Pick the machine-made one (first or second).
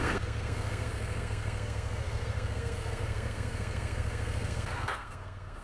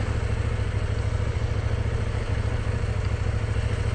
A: first